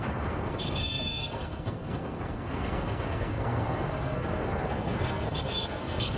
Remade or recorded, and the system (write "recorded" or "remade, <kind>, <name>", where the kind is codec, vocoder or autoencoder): remade, codec, SNAC